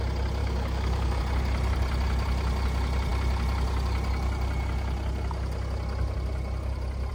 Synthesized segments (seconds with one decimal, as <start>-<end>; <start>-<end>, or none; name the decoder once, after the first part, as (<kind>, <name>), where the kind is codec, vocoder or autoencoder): 0.4-1.2 (codec, DAC)